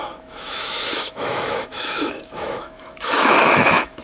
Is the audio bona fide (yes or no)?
no